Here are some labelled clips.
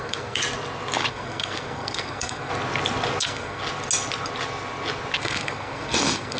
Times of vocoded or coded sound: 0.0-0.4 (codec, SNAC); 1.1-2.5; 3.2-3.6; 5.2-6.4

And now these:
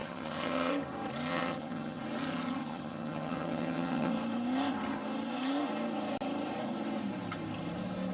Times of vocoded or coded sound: 0.0-0.7 (vocoder, HiFi-GAN); 1.3-2.0; 2.6-4.1

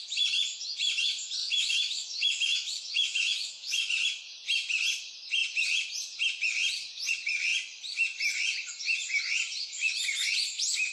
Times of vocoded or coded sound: 1.4-3.9 (autoencoder, DAC-VAE)

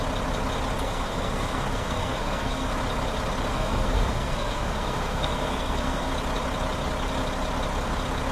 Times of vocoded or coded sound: 0.8-2.7 (codec, SNAC); 3.5-6.1

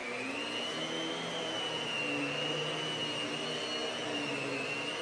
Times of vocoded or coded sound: none

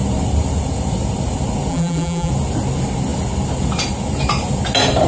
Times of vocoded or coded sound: 1.7-2.3 (vocoder, BigVGAN v2)